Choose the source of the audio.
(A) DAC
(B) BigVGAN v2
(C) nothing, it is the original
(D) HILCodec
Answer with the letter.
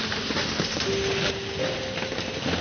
C